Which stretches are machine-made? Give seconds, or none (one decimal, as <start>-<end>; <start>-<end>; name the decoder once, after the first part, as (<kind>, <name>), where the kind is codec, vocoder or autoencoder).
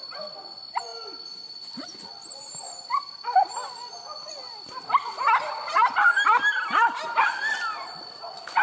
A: none